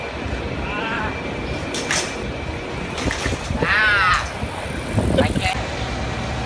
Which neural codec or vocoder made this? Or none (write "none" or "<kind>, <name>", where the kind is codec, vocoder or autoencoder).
none